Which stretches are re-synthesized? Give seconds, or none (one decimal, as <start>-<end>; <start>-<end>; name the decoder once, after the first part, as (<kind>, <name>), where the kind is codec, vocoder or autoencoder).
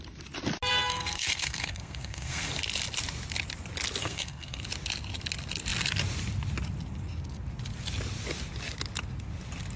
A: 0.7-2.5 (codec, SNAC); 4.0-4.6